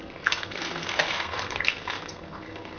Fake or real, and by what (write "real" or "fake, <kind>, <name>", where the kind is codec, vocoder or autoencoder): fake, codec, SNAC